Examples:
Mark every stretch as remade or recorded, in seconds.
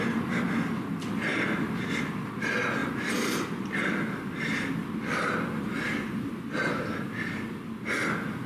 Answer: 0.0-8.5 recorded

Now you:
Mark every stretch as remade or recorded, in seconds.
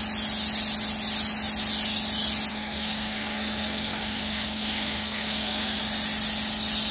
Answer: 0.0-2.5 recorded; 2.5-5.8 remade; 5.8-6.9 recorded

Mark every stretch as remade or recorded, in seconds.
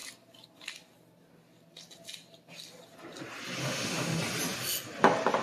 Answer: 0.0-3.6 recorded; 3.6-4.2 remade; 4.2-5.4 recorded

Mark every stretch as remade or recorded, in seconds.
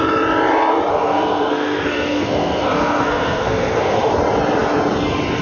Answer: 0.0-0.9 recorded; 0.9-4.1 remade; 4.1-5.4 recorded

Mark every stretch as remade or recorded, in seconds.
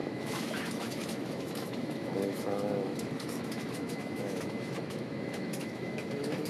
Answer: 0.0-6.5 remade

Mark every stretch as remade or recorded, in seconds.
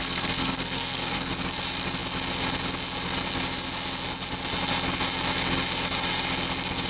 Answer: 0.0-1.3 remade; 1.3-6.9 recorded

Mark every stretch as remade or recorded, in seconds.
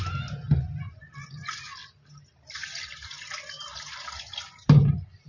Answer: 0.0-1.8 recorded; 1.8-5.3 remade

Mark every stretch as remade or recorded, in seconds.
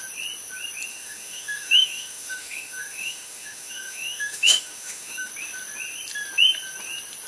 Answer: 0.0-0.9 recorded; 0.9-5.3 remade; 5.3-7.3 recorded